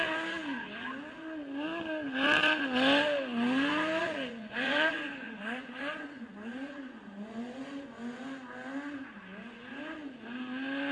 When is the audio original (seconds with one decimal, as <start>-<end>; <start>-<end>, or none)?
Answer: 0.0-4.0; 8.2-10.9

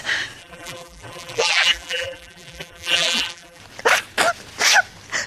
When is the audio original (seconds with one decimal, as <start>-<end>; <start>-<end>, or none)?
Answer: 0.0-0.4; 3.6-5.3

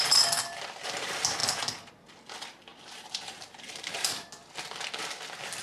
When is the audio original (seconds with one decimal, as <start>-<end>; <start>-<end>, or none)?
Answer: 0.0-2.7; 4.3-5.6

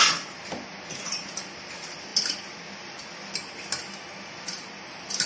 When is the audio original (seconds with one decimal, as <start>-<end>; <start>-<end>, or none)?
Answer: 0.0-5.3